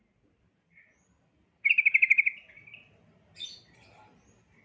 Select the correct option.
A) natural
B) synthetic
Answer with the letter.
A